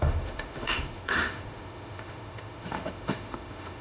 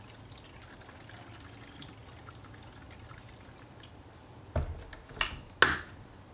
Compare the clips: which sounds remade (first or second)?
first